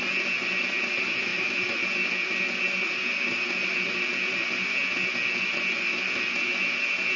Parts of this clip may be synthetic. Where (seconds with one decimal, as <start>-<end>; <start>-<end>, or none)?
none